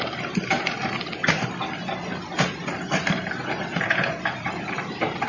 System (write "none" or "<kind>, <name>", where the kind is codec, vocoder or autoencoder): none